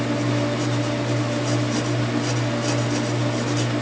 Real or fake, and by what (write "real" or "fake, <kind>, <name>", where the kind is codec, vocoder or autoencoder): real